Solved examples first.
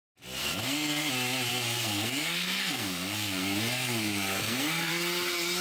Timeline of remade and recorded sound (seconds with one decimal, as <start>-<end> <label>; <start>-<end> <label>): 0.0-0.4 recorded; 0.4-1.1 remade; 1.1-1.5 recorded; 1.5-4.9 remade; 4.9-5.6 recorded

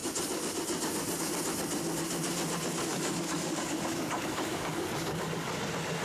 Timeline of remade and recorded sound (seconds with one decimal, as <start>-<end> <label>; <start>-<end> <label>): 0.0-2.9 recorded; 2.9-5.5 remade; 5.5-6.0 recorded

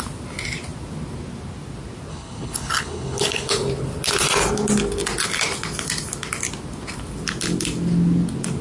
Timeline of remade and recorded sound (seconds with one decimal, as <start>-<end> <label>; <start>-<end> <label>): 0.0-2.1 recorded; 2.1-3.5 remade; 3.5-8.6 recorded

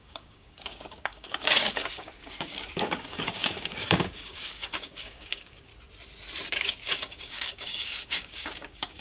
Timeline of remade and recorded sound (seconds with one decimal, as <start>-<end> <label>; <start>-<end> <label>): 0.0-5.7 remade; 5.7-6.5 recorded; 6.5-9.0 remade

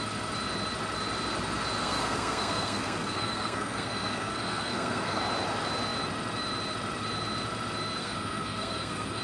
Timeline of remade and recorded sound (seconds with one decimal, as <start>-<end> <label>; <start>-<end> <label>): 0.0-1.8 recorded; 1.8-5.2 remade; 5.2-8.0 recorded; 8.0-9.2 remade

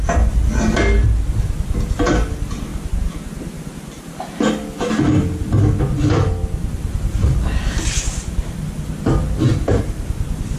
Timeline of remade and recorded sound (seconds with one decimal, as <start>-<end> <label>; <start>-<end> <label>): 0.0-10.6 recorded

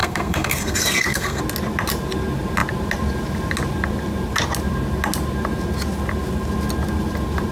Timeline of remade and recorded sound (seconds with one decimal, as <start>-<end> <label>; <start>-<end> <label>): 0.0-1.4 remade; 1.4-7.5 recorded